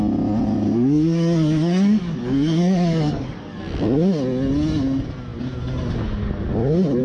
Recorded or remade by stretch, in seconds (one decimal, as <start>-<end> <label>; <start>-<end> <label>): 0.0-0.5 recorded; 0.5-3.6 remade; 3.6-7.0 recorded